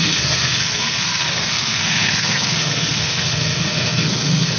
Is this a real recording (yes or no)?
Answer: no